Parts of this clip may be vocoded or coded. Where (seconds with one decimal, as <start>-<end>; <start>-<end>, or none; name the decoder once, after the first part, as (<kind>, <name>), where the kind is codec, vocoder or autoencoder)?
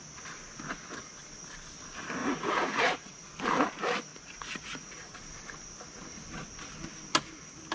2.2-3.2 (vocoder, Vocos); 4.1-5.2